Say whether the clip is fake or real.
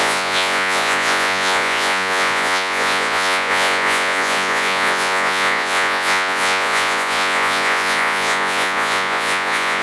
fake